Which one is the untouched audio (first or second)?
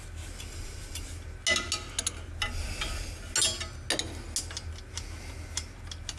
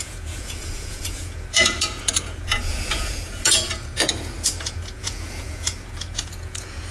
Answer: first